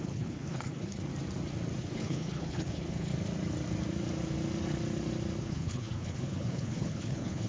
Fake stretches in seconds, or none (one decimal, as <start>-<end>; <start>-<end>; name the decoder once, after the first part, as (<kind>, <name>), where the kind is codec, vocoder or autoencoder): 0.0-1.1 (codec, HILCodec); 1.8-3.1; 5.4-7.5